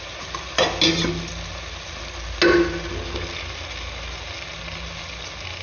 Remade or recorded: recorded